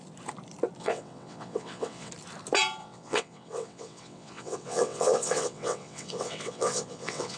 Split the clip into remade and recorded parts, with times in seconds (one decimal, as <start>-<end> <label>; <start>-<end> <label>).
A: 0.0-0.8 recorded; 0.8-2.1 remade; 2.1-2.8 recorded; 2.8-7.4 remade